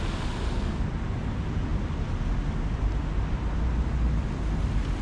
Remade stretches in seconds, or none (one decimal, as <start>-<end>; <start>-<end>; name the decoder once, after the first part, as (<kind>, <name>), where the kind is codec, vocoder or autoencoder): none